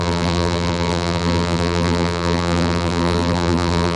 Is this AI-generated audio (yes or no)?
yes